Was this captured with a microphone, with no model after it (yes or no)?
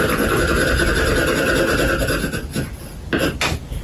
yes